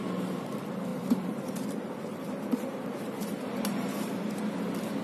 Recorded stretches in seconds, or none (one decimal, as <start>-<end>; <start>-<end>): 0.0-0.9; 3.9-5.0